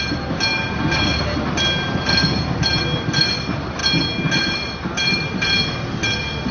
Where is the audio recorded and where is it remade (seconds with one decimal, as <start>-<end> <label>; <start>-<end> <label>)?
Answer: 0.0-6.5 recorded